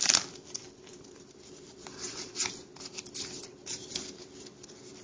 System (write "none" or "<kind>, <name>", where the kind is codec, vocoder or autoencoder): none